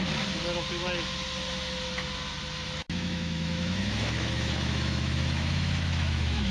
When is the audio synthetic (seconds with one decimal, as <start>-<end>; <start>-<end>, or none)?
2.8-6.5